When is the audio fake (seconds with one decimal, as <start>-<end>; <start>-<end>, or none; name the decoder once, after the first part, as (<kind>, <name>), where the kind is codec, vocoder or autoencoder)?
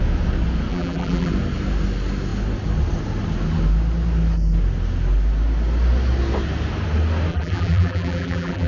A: 0.7-1.3 (vocoder, BigVGAN v2); 7.3-8.7